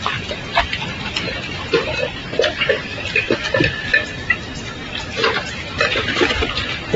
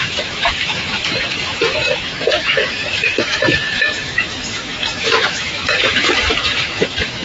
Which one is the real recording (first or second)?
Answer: first